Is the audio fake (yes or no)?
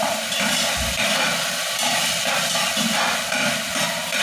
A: yes